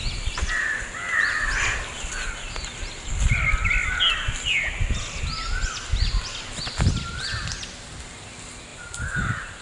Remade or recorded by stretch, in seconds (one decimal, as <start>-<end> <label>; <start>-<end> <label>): 0.0-9.6 recorded